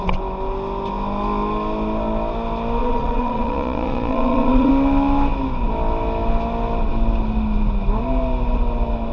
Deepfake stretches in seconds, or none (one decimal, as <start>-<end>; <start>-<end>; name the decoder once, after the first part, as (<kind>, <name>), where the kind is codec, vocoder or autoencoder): 2.8-4.7 (vocoder, Vocos)